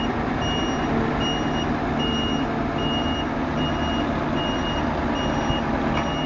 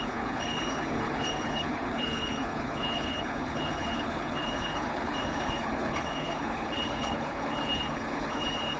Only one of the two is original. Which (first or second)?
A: first